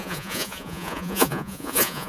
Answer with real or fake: fake